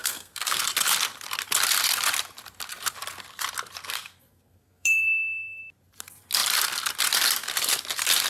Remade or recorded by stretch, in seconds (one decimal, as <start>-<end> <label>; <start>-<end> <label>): 0.0-0.6 remade; 0.6-3.8 recorded; 3.8-5.6 remade; 5.6-8.3 recorded